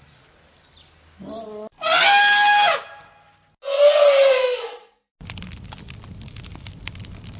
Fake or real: real